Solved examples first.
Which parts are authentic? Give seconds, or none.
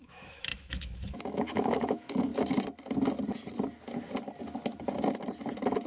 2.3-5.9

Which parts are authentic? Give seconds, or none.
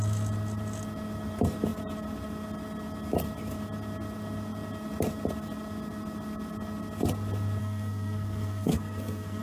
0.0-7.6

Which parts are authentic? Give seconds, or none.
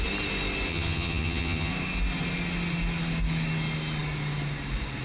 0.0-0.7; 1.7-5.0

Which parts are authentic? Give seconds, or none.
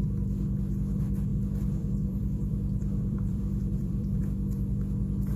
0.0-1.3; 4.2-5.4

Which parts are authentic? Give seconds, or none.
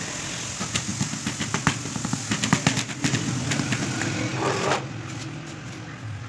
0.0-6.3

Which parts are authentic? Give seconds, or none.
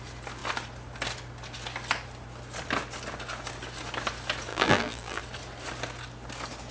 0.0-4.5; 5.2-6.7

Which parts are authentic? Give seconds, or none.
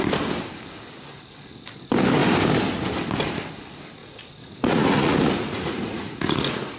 0.0-4.0